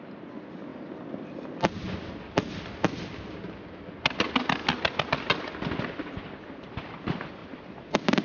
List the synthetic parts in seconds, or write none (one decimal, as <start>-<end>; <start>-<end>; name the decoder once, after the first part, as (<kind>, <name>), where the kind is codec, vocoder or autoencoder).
none